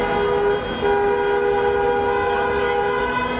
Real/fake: real